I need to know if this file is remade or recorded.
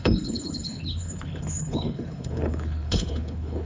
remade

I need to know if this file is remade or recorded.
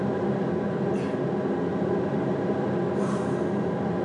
recorded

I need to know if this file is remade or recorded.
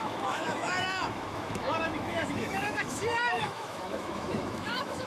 remade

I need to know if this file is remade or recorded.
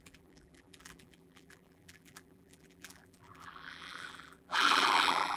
remade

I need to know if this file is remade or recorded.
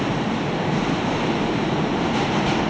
recorded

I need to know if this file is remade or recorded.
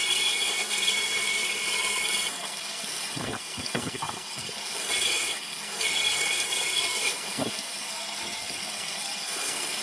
remade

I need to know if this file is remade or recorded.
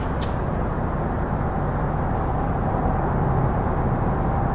recorded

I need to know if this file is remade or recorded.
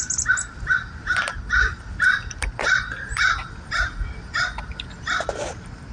recorded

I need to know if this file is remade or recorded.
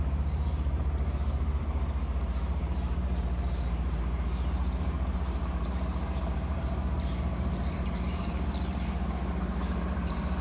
remade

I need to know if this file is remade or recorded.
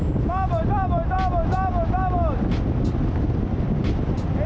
recorded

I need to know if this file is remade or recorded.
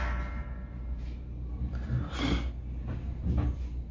recorded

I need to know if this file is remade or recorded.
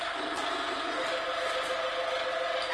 recorded